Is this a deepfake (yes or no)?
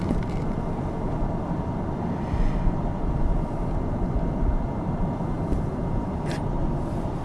no